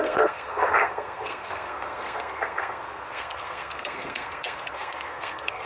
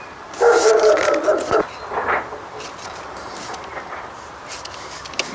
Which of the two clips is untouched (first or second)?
second